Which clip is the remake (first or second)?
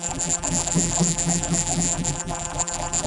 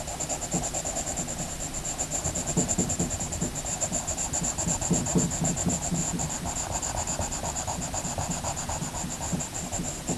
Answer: first